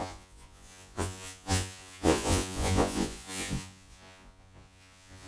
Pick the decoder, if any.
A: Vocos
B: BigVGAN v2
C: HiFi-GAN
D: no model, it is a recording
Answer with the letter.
A